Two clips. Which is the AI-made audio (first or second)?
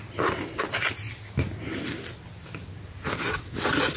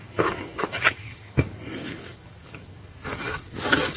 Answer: second